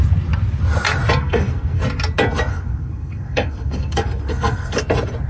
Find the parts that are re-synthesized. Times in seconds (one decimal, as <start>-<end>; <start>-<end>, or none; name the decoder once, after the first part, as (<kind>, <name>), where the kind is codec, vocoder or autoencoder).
1.2-1.8 (codec, SNAC); 2.5-4.8